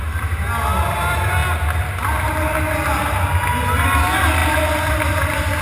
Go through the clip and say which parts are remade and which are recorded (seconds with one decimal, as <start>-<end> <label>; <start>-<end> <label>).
0.0-5.6 recorded